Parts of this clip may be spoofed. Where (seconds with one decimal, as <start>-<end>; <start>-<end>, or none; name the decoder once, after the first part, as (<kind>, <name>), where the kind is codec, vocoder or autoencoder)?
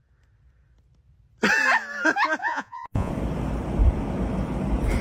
2.4-3.1 (vocoder, Vocos)